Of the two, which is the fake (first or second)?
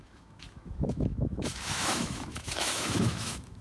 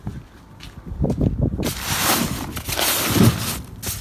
first